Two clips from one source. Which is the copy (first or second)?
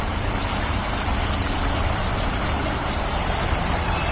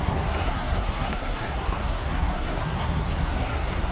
second